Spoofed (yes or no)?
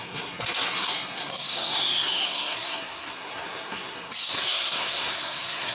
yes